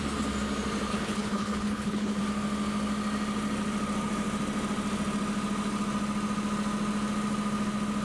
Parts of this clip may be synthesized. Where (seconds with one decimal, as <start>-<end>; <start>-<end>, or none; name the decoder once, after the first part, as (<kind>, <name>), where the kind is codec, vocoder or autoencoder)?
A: 0.9-2.2 (codec, HILCodec)